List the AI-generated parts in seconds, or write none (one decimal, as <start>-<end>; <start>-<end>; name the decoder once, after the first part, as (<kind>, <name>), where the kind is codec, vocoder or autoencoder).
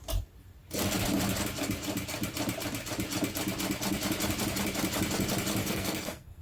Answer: 5.6-6.4 (codec, SNAC)